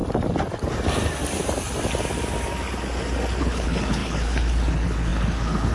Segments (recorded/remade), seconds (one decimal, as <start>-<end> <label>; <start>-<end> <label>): 0.0-3.4 recorded; 3.4-5.7 remade